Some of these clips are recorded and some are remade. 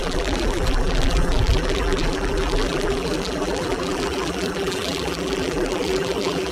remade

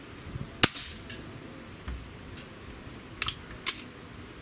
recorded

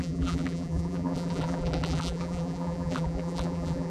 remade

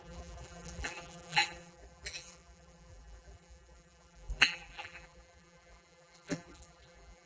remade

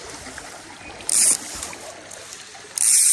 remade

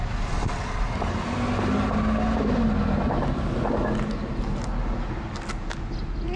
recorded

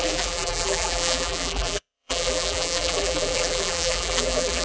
remade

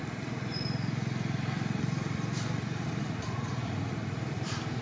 remade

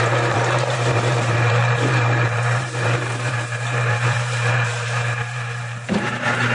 remade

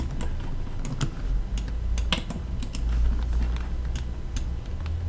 recorded